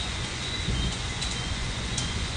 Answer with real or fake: fake